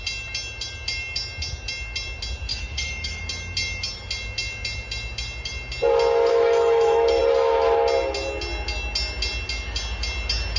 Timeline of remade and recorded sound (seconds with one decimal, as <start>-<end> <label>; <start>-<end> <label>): 0.0-2.5 recorded; 2.5-3.2 remade; 3.2-6.3 recorded; 6.3-7.2 remade; 7.2-10.6 recorded